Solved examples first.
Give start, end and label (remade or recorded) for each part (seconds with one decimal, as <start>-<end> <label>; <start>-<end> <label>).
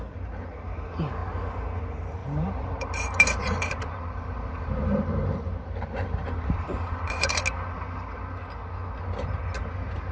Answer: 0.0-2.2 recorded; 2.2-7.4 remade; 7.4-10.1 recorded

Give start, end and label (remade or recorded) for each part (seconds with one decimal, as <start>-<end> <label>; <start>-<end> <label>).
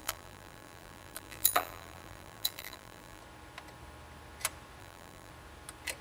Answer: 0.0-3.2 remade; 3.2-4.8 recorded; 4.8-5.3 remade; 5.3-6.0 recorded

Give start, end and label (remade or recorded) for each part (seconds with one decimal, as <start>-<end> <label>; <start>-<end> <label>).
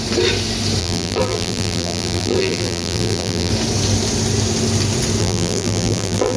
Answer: 0.0-0.8 recorded; 0.8-3.5 remade; 3.5-5.2 recorded; 5.2-6.4 remade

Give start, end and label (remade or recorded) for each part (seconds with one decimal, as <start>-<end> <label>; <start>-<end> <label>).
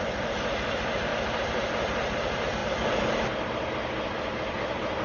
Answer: 0.0-1.1 remade; 1.1-1.7 recorded; 1.7-2.6 remade; 2.6-5.0 recorded